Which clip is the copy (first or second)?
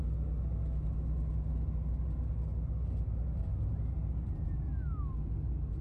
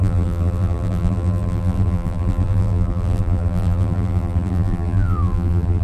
second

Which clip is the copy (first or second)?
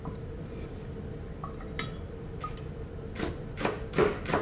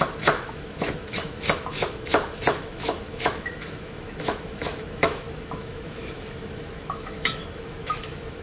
second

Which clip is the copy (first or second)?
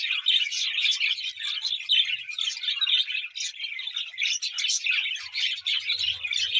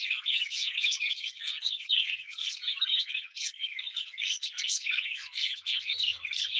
second